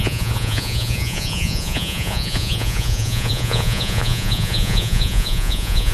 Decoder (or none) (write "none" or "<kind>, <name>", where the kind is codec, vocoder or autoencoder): vocoder, Vocos